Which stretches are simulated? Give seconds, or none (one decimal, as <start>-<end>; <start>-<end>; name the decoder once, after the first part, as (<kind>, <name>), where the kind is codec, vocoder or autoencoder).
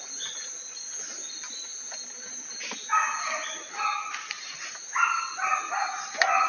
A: none